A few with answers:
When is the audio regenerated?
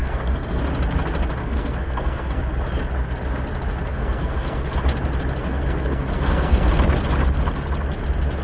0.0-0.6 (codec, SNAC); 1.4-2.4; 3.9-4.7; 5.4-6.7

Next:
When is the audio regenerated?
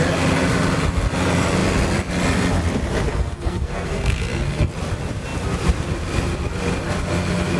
3.1-4.7 (codec, SNAC)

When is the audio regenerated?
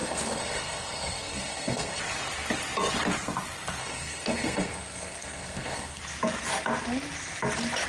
0.0-2.0 (codec, SNAC); 3.8-6.0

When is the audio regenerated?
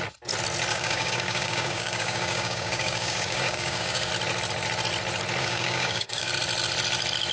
0.7-4.1 (codec, DAC); 5.4-6.3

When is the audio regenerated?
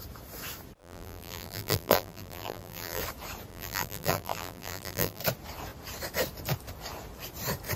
0.8-3.0 (vocoder, BigVGAN v2); 3.5-5.2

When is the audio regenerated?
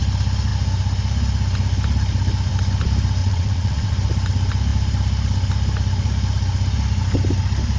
3.2-3.9 (vocoder, WaveNeXt)